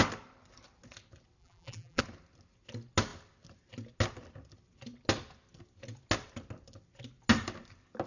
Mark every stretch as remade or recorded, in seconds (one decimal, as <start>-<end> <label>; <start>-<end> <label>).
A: 0.0-1.4 recorded; 1.4-2.0 remade; 2.0-8.1 recorded